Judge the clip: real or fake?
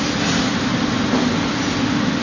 real